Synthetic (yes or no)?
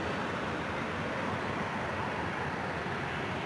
yes